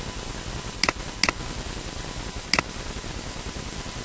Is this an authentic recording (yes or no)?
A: yes